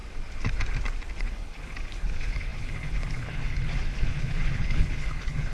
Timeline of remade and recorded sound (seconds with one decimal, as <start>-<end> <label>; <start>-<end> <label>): 0.0-1.2 recorded; 1.2-5.5 remade